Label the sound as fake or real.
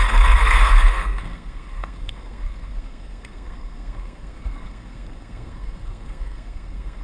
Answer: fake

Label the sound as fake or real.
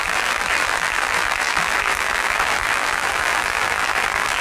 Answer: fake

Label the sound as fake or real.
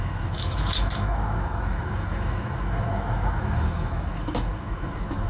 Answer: fake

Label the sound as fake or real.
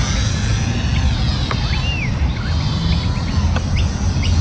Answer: real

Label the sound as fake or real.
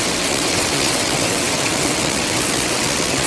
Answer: fake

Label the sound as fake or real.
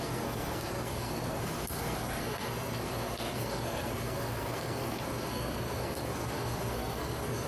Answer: fake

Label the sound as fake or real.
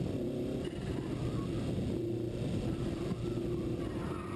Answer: real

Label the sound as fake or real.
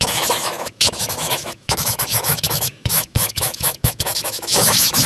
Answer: fake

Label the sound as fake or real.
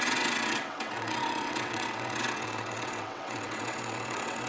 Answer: fake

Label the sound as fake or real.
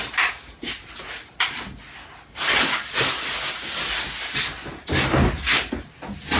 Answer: real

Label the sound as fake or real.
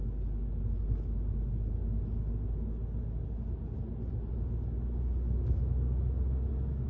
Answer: real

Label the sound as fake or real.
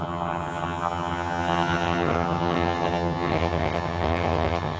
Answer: fake